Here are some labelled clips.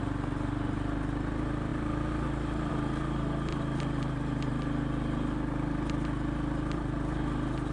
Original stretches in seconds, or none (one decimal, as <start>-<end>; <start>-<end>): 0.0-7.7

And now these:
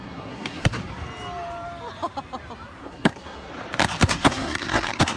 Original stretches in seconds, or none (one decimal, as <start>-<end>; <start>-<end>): 0.8-2.8; 3.5-4.0

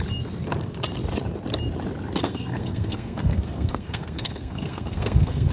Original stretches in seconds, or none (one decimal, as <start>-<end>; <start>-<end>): 0.0-2.2

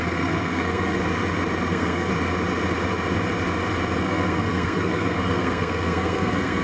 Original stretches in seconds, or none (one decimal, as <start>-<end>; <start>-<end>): 1.0-1.7; 2.1-4.0

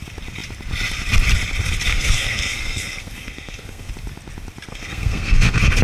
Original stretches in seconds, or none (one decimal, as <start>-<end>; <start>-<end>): 0.0-1.9; 3.9-4.7

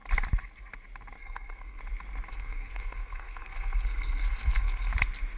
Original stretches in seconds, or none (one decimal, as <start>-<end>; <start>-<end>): 0.0-1.2; 1.8-2.3; 4.9-5.4